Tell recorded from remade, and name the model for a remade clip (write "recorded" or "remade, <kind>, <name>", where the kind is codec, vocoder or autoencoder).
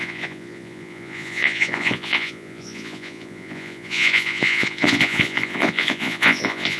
remade, vocoder, Vocos